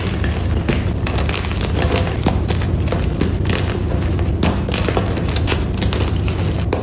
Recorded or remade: recorded